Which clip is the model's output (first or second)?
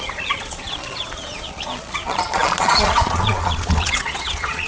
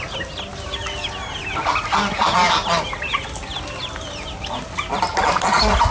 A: first